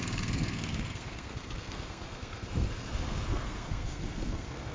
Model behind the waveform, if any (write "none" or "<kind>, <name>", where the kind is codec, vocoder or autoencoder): codec, SNAC